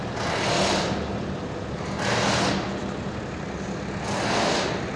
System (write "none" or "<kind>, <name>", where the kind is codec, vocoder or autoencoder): none